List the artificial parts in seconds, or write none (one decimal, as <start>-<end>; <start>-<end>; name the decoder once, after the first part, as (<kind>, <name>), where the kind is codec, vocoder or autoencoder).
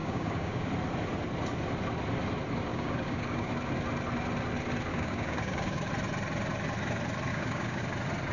0.0-0.7 (codec, DAC); 2.7-3.5; 4.9-5.9; 7.3-7.8